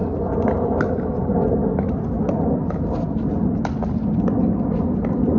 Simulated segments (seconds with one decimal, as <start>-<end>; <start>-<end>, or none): none